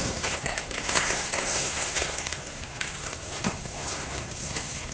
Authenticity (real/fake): fake